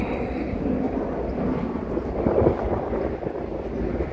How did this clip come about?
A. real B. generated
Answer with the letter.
A